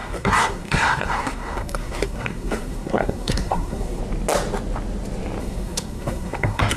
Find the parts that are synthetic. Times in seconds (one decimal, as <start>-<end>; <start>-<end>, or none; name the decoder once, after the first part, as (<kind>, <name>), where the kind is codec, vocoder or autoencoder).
0.0-4.0 (codec, SNAC); 5.4-6.8